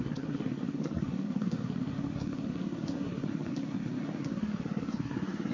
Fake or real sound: fake